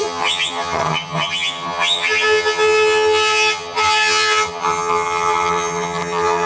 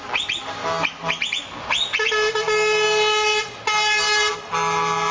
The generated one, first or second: first